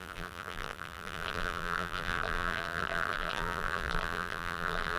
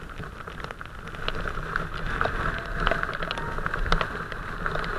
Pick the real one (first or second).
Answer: second